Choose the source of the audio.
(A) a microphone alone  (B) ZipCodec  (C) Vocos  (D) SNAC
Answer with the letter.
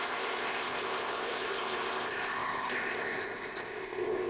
B